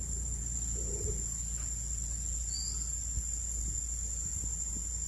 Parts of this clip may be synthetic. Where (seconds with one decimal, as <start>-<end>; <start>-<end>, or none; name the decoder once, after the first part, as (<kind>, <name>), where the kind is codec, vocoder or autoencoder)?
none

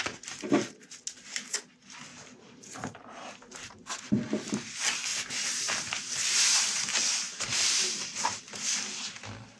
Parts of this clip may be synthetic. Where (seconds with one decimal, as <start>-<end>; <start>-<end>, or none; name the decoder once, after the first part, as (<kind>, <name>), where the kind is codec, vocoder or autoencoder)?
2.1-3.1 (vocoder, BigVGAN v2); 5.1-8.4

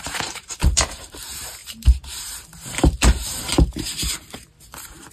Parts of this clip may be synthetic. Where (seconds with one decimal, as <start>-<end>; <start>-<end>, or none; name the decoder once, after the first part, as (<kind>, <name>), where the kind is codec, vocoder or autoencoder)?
0.0-5.1 (vocoder, BigVGAN v2)